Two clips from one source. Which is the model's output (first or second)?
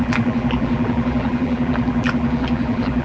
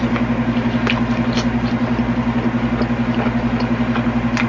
first